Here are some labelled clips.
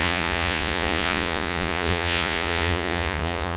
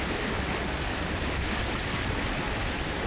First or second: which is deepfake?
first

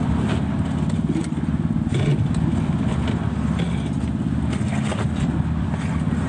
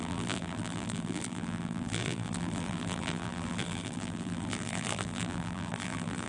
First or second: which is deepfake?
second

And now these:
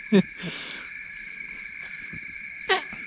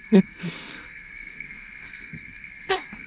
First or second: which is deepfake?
second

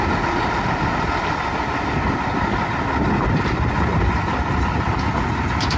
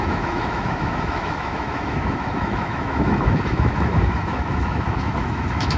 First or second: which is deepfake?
second